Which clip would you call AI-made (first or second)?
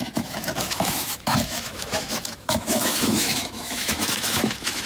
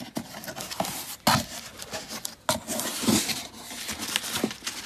first